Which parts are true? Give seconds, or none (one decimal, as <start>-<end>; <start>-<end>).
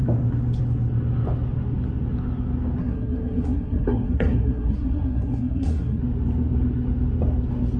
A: 0.0-2.8; 6.0-7.8